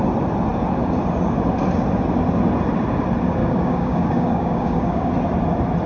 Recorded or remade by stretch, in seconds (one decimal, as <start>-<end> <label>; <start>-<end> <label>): 0.0-3.4 recorded; 3.4-5.1 remade; 5.1-5.9 recorded